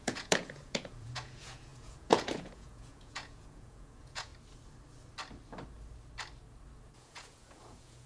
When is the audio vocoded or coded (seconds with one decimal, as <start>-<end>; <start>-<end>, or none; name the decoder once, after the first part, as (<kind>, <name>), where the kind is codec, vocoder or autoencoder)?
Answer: 0.0-4.3 (vocoder, Vocos); 6.9-8.1